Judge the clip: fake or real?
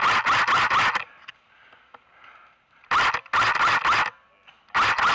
real